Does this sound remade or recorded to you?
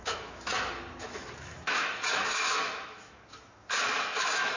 remade